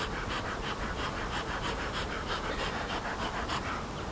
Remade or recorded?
remade